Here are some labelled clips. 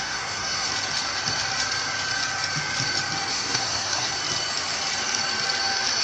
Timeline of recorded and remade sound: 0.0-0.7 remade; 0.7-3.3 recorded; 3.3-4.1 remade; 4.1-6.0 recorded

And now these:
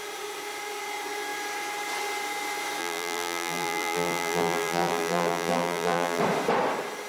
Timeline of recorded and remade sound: 0.0-2.8 recorded; 2.8-6.2 remade; 6.2-7.1 recorded

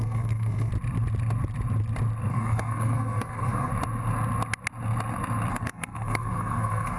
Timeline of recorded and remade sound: 0.0-0.7 remade; 0.7-2.3 recorded; 2.3-3.7 remade; 3.7-5.5 recorded; 5.5-7.0 remade

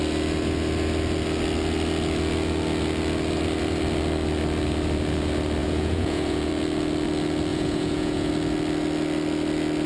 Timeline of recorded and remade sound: 0.0-5.6 recorded; 5.6-6.5 remade; 6.5-7.5 recorded; 7.5-8.3 remade; 8.3-9.9 recorded

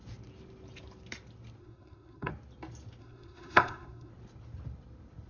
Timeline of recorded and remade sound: 0.0-1.6 recorded; 1.6-2.3 remade; 2.3-3.0 recorded; 3.0-4.1 remade; 4.1-5.3 recorded

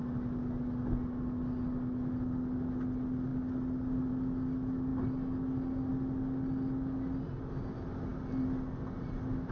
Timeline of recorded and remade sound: 0.0-9.5 recorded

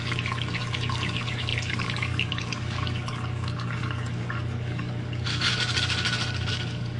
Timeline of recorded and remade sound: 0.0-5.5 remade; 5.5-6.5 recorded; 6.5-7.0 remade